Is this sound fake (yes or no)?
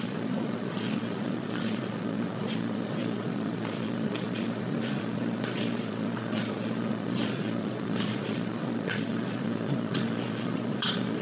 yes